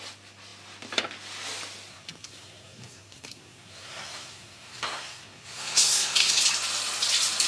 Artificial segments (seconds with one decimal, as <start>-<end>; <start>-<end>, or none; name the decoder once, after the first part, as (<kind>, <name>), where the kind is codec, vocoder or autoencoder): 1.9-6.4 (codec, SNAC)